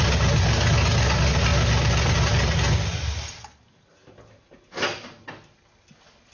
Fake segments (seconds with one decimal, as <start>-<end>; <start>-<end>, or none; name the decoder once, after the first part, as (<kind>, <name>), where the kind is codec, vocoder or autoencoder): none